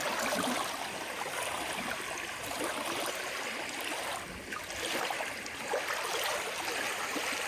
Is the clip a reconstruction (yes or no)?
no